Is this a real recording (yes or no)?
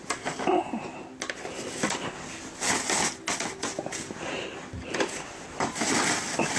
yes